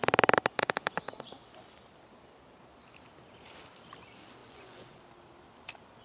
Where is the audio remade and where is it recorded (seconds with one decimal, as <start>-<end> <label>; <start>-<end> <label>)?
0.0-0.6 recorded; 0.6-1.3 remade; 1.3-4.4 recorded; 4.4-5.0 remade; 5.0-6.0 recorded